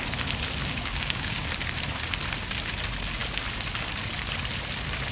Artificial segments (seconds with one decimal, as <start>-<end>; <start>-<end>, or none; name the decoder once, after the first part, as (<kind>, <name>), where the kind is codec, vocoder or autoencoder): 0.6-1.5 (codec, DAC)